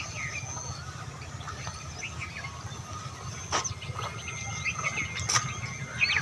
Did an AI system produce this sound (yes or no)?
no